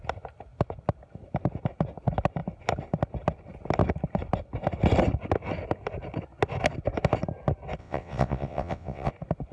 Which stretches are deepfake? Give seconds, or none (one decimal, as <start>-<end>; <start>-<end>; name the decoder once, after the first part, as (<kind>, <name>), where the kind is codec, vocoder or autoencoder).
7.8-9.1 (vocoder, WaveNeXt)